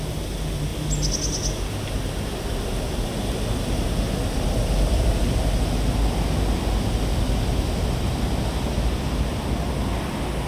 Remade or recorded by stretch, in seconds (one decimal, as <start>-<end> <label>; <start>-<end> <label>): 0.0-10.5 recorded

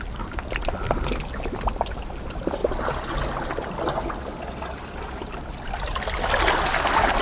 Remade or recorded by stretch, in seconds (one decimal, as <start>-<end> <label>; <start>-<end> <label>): 0.0-7.2 recorded

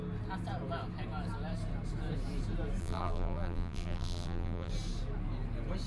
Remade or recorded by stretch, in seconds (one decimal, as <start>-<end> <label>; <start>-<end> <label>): 0.0-2.8 recorded; 2.8-4.7 remade; 4.7-5.9 recorded